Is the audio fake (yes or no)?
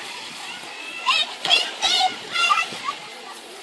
yes